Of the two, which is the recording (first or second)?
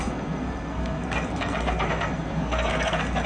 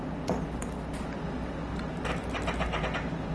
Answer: second